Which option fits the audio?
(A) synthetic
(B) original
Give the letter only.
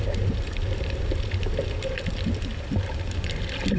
B